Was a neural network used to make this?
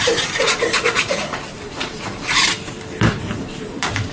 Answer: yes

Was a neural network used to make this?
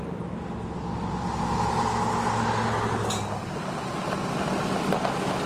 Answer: no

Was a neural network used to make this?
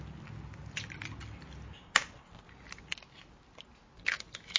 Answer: no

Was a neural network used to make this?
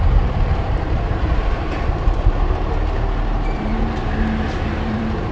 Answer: yes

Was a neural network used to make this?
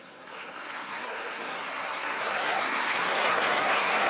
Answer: yes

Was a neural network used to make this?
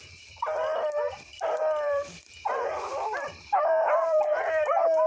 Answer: yes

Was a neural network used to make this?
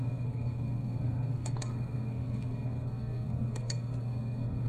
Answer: yes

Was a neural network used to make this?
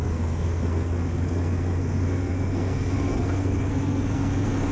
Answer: yes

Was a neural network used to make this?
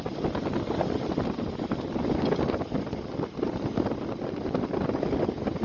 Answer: no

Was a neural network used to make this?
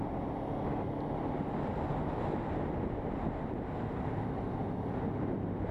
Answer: no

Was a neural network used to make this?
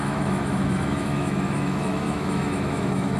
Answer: yes